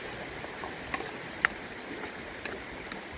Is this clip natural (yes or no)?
yes